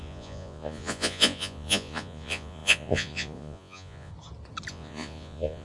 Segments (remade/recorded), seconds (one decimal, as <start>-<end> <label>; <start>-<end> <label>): 0.0-4.1 remade; 4.1-4.7 recorded; 4.7-5.6 remade